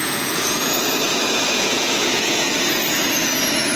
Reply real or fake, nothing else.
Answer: fake